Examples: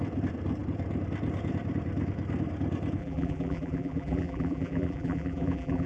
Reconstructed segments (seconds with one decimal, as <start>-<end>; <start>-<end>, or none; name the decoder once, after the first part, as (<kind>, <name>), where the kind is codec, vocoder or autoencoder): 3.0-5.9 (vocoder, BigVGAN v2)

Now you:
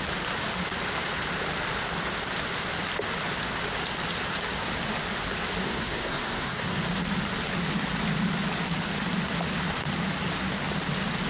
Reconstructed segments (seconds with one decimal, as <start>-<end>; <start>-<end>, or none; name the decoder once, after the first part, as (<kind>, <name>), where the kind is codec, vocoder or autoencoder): 5.6-6.8 (codec, SNAC)

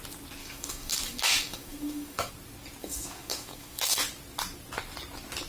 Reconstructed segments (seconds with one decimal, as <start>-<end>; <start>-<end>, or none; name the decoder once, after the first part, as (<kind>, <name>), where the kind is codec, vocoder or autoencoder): 0.4-2.3 (autoencoder, DAC-VAE); 2.8-4.0

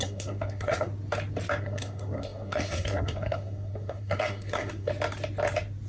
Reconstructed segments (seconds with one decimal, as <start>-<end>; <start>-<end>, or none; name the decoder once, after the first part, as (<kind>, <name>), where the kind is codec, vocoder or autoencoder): 0.0-0.9 (codec, SNAC); 1.6-4.9

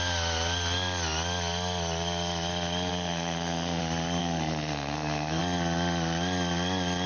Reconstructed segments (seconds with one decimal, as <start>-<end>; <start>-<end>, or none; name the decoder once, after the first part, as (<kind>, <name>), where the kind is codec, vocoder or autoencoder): 2.9-3.8 (codec, SNAC); 4.2-5.4

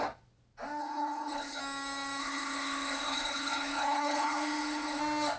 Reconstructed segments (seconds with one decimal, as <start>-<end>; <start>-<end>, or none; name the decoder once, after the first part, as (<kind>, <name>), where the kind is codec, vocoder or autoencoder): 0.8-1.6 (codec, HILCodec); 2.2-5.0